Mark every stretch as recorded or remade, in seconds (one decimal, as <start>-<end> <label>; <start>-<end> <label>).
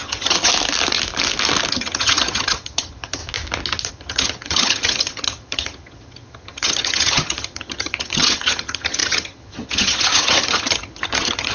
0.0-0.5 remade; 0.5-1.7 recorded; 1.7-3.2 remade; 3.2-3.9 recorded; 3.9-11.5 remade